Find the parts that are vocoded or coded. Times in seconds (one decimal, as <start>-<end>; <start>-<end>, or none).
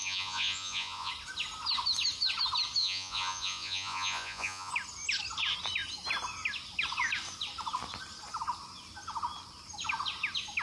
0.0-1.1; 2.8-4.7